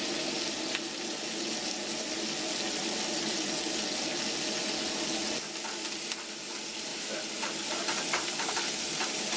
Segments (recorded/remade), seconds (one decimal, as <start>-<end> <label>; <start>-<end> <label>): 0.0-6.9 recorded; 6.9-8.5 remade; 8.5-9.4 recorded